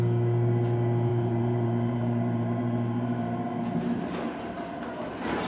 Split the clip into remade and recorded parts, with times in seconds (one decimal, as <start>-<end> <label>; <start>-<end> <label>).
0.0-1.1 recorded; 1.1-4.4 remade; 4.4-5.5 recorded